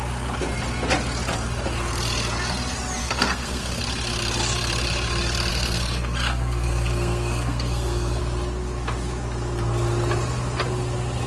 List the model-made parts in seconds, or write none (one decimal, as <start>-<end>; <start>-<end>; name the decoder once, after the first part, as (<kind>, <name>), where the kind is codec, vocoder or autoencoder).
3.0-3.8 (codec, SNAC); 5.5-8.2